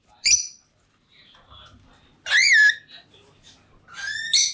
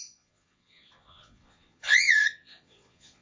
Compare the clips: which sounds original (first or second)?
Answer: first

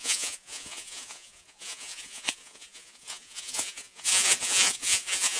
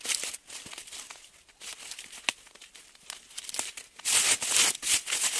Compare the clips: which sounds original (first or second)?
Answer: second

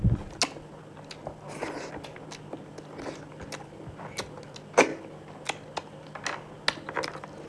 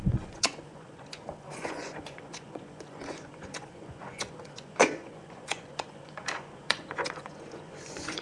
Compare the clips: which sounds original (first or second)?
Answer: first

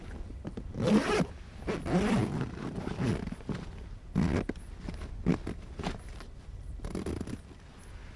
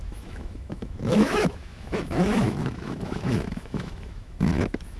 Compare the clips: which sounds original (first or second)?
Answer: first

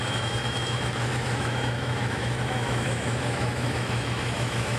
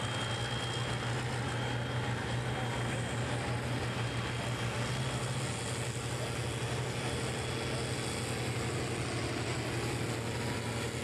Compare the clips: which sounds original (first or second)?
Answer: second